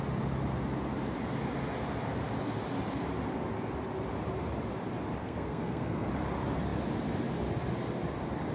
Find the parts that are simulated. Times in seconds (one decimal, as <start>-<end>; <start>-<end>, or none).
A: 5.2-6.1